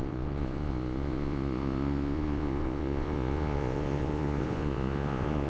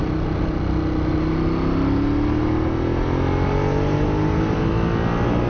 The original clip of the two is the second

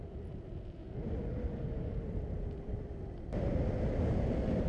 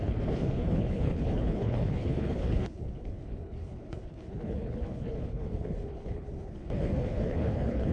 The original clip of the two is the first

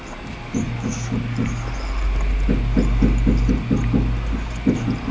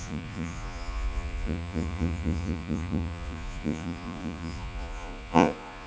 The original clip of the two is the first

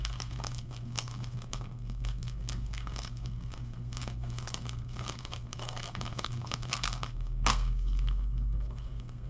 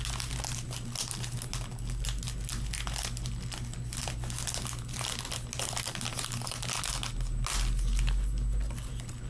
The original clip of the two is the second